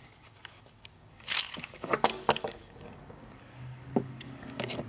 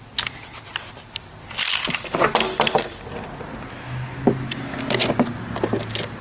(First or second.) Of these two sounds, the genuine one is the second